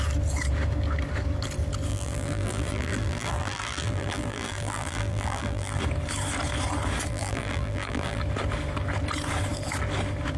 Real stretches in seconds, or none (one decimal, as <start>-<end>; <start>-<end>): 0.0-1.9; 5.8-7.1; 8.2-10.4